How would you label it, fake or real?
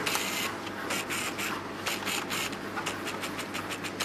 real